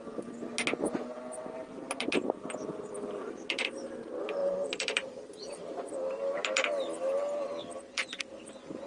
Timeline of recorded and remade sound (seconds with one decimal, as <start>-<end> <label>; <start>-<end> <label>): 0.0-4.4 recorded; 4.4-8.2 remade; 8.2-8.9 recorded